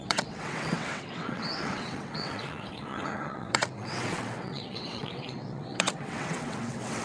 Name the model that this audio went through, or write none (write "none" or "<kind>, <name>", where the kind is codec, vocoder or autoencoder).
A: vocoder, WaveNeXt